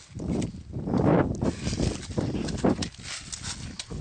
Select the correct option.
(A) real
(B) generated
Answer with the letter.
A